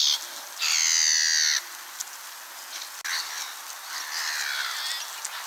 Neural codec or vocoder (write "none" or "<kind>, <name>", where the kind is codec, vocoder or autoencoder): none